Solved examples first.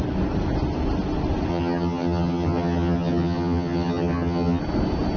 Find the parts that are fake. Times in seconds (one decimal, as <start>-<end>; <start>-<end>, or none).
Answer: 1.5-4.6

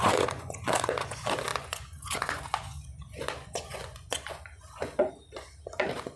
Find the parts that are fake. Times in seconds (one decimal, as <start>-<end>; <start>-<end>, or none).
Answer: 0.0-6.2

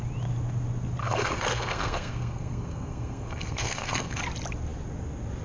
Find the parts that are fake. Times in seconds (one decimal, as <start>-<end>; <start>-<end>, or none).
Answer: 1.0-4.2

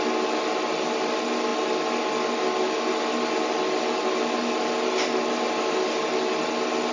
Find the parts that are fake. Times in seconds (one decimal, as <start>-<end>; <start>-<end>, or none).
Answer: none